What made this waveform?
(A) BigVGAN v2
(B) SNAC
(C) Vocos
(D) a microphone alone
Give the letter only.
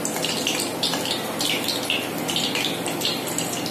D